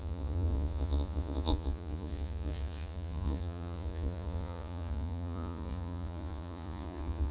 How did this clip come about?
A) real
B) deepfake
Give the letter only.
B